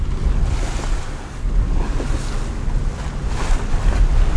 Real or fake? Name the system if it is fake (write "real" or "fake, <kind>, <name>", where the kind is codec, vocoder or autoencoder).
real